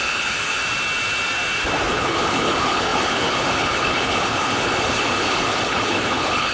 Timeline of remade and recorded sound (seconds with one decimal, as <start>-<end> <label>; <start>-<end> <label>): 0.0-0.6 remade; 0.6-1.9 recorded; 1.9-6.5 remade